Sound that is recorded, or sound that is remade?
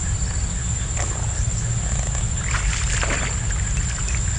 recorded